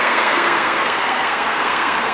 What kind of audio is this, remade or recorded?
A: remade